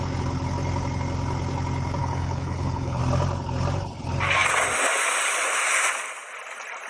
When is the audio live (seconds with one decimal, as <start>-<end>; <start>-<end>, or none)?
0.0-2.0; 3.0-6.9